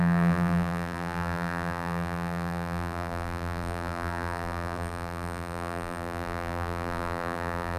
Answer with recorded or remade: remade